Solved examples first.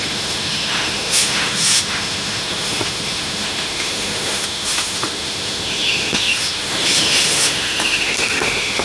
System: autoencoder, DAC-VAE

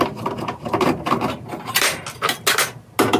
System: none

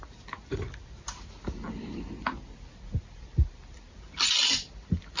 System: none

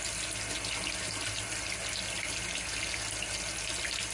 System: none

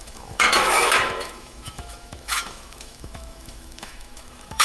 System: autoencoder, DAC-VAE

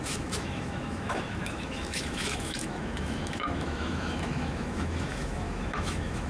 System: autoencoder, DAC-VAE